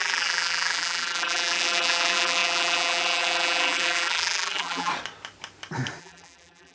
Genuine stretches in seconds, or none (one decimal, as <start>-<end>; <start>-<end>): 4.9-6.0